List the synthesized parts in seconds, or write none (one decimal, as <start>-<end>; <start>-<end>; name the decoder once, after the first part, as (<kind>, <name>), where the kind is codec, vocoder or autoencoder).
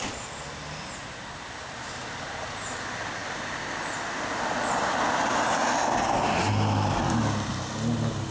none